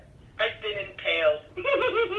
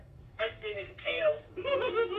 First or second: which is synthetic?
second